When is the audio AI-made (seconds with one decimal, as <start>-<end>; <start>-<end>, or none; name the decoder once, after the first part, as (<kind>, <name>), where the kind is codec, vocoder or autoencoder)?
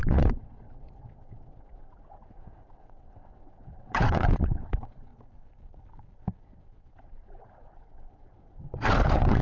0.0-5.1 (vocoder, WaveNeXt); 6.4-9.4